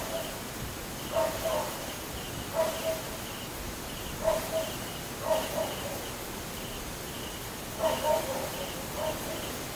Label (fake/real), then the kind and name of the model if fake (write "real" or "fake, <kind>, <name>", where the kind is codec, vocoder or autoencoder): real